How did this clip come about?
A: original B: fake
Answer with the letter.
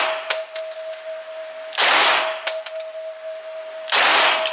A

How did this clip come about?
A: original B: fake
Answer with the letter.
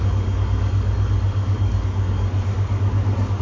B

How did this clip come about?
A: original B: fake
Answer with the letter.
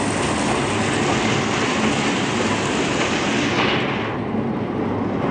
A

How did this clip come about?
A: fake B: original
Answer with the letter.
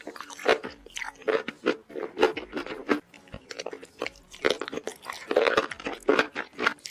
B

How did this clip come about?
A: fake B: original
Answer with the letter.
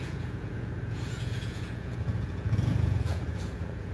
A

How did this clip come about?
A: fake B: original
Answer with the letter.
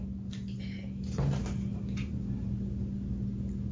B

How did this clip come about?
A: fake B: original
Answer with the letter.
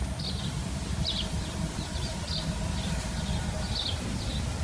B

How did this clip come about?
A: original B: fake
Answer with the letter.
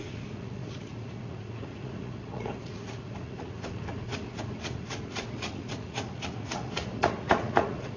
B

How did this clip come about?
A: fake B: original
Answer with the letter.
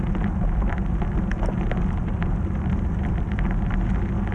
B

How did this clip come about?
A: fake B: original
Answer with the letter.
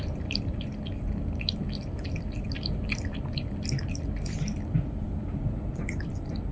B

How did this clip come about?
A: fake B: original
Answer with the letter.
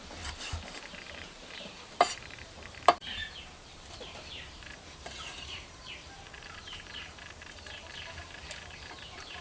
A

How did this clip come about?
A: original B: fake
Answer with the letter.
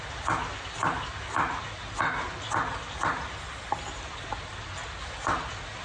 A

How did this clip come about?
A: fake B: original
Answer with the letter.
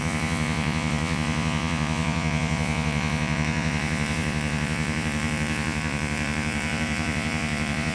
A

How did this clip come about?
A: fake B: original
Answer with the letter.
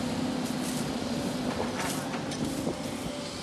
B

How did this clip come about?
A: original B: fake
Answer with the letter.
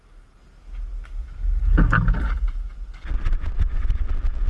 A